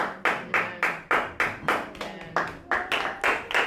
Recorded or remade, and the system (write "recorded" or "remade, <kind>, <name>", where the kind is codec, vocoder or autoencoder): recorded